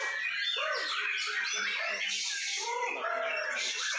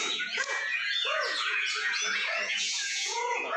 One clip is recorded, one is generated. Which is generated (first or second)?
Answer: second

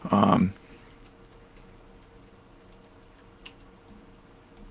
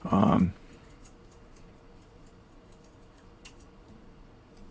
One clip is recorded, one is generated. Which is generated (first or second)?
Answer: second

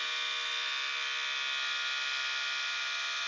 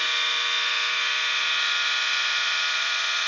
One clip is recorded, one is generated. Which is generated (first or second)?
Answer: second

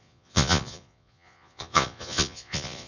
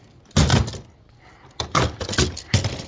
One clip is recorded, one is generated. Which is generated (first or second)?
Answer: first